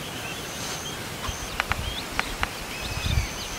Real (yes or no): no